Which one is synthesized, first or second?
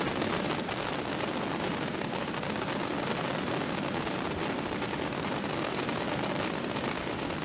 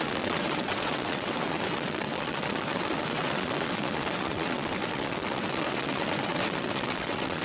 second